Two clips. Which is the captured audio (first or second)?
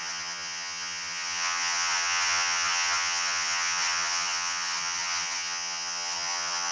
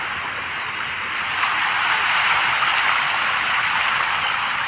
second